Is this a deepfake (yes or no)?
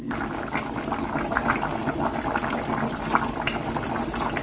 no